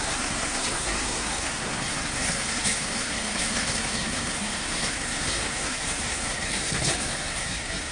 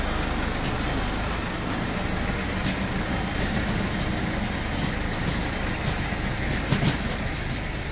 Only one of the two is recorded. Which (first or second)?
second